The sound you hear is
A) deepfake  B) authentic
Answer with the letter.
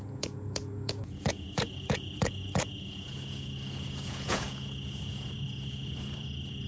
A